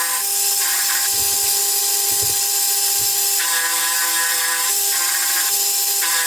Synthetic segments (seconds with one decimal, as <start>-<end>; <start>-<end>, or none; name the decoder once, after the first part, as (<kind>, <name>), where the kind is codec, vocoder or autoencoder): none